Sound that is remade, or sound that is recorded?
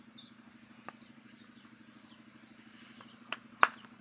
remade